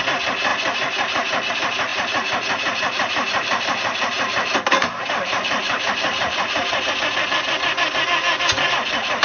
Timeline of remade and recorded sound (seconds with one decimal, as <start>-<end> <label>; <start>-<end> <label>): 0.0-1.9 recorded; 1.9-6.9 remade; 6.9-9.2 recorded